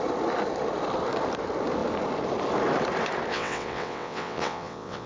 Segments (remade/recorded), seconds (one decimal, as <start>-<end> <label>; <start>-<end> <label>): 0.0-3.3 recorded; 3.3-5.1 remade